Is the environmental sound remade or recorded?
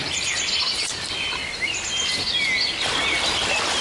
recorded